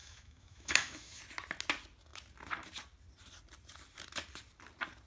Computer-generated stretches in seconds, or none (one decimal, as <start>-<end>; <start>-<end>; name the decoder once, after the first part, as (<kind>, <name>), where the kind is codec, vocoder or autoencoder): 0.0-1.2 (autoencoder, DAC-VAE)